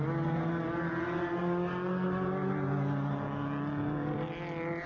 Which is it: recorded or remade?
recorded